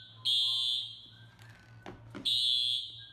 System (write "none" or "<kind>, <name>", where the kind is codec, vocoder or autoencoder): none